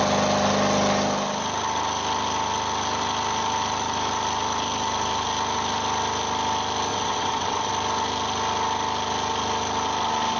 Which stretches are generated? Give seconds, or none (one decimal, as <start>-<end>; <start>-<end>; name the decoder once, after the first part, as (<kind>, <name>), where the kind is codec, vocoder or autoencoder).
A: 6.9-7.7 (vocoder, WaveNeXt)